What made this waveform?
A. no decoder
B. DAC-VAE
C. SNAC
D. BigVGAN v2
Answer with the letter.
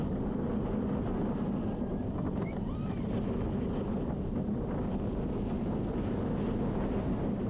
A